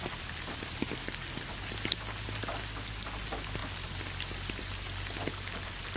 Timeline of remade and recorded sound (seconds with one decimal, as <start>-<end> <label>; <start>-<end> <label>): 0.0-6.0 recorded